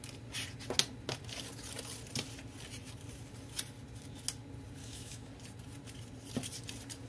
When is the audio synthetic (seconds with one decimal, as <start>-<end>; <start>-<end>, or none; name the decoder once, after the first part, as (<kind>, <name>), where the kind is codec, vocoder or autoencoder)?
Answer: 4.8-5.3 (autoencoder, DAC-VAE)